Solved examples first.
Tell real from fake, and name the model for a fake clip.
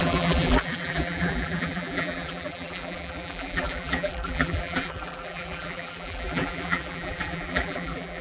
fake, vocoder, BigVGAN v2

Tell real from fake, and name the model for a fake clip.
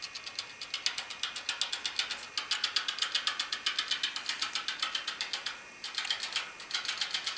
real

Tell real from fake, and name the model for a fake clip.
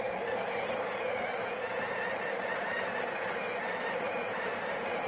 real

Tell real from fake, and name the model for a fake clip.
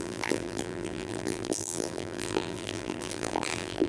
fake, vocoder, BigVGAN v2